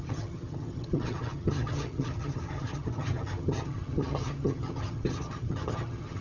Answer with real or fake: fake